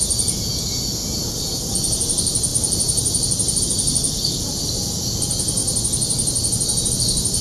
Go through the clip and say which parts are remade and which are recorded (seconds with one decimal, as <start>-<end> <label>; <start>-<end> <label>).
0.0-5.6 remade; 5.6-6.9 recorded; 6.9-7.4 remade